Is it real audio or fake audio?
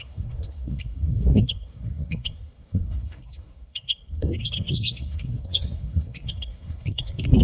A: fake